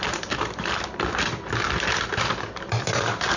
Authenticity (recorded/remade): remade